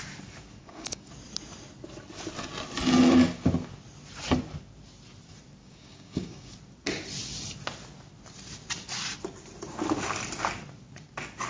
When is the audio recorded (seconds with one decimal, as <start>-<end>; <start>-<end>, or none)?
0.0-0.6; 1.1-5.6; 6.5-11.5